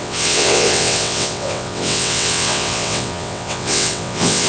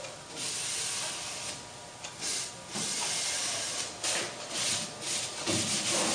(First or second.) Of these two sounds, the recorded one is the second